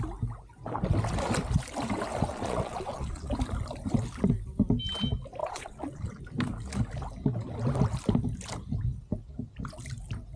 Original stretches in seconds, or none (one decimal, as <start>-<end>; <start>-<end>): 0.0-2.3; 3.3-5.4; 6.2-10.4